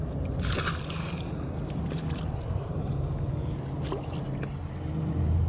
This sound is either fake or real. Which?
real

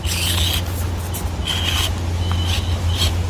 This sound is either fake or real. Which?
real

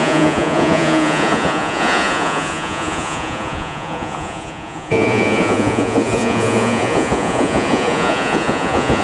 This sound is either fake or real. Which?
fake